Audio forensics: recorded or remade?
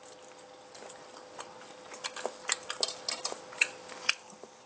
recorded